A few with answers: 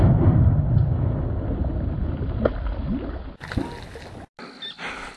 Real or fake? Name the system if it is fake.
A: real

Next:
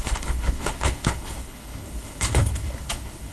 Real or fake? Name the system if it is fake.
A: fake, codec, HILCodec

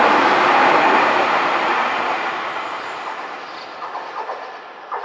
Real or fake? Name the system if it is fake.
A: real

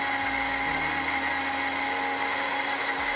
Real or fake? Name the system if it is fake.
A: real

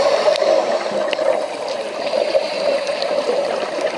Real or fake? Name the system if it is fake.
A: real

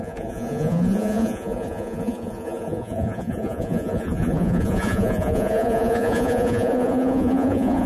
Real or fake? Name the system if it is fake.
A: fake, vocoder, Vocos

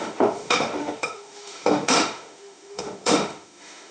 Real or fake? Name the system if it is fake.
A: fake, autoencoder, DAC-VAE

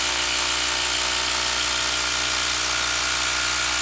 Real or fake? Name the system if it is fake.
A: real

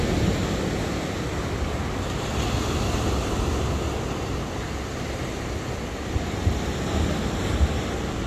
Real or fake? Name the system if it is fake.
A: real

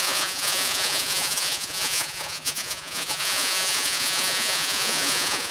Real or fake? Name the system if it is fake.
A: fake, vocoder, Vocos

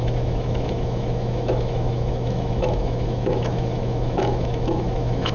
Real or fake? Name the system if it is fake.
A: fake, autoencoder, DAC-VAE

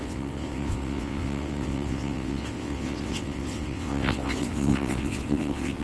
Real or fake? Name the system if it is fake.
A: fake, vocoder, WaveNeXt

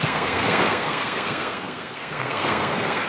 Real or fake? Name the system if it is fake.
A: fake, codec, SNAC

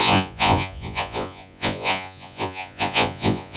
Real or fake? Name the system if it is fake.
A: fake, vocoder, Vocos